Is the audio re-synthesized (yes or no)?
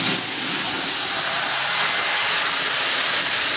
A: no